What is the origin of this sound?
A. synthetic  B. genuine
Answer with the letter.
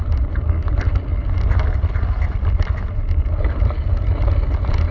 B